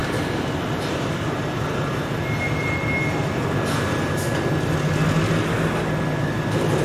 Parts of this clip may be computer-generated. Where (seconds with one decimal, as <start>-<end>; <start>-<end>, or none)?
none